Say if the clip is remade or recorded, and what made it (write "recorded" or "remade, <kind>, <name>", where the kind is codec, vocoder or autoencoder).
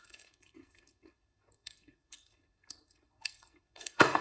remade, codec, SNAC